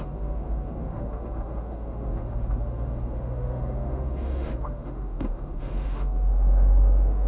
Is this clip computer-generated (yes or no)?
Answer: yes